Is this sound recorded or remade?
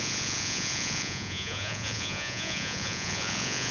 remade